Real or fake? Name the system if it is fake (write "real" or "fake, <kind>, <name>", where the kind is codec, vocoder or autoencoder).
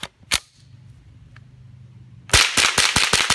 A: real